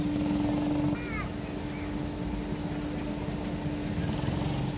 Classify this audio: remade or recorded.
recorded